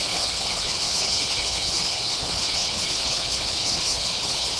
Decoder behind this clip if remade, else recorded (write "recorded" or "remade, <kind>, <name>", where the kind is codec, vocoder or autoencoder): remade, codec, HILCodec